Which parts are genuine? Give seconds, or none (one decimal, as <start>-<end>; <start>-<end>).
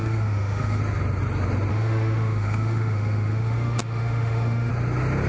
0.8-1.7; 4.7-5.3